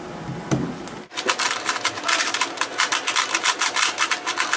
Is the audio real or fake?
real